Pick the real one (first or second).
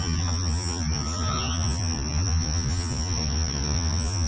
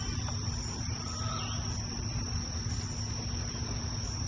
second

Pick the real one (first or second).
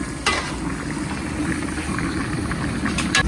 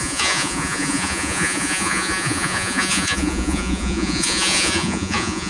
first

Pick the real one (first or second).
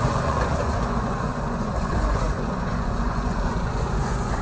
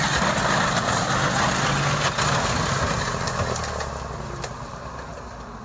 second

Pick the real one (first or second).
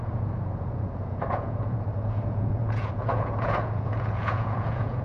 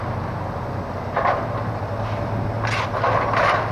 second